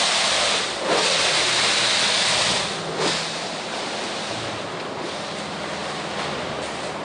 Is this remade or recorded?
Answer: recorded